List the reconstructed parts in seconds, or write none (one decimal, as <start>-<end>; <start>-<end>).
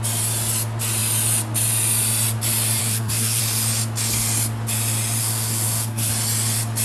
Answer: 2.8-3.4; 5.2-6.1